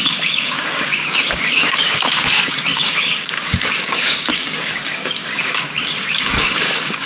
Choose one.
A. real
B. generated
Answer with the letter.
B